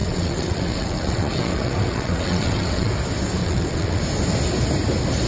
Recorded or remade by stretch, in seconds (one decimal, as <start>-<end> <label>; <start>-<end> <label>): 0.0-2.9 remade; 2.9-3.4 recorded; 3.4-4.0 remade; 4.0-5.3 recorded